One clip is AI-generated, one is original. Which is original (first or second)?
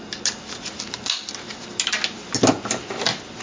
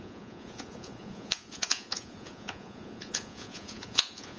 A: first